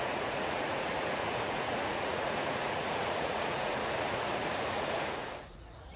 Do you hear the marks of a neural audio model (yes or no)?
yes